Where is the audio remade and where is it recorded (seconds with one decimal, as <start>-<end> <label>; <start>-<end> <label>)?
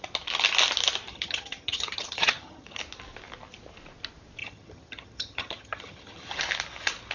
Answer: 0.0-1.1 recorded; 1.1-2.8 remade; 2.8-4.4 recorded; 4.4-6.4 remade; 6.4-7.1 recorded